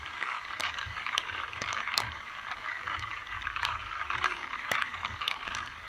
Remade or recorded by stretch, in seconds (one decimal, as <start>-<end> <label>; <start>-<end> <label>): 0.0-5.9 remade